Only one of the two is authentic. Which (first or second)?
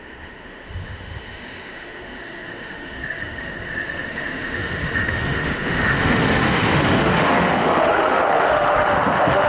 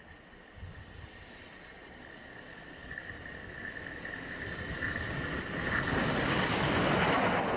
second